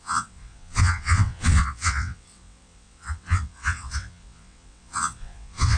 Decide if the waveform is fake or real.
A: fake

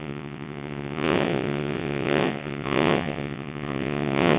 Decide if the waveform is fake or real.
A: fake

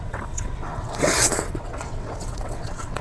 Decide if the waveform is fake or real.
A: fake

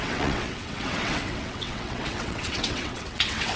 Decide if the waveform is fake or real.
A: fake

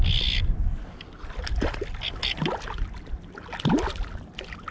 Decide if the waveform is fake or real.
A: real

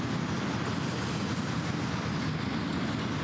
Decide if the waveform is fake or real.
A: real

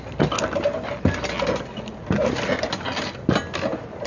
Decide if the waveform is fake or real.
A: real